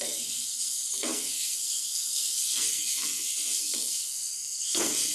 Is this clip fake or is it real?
fake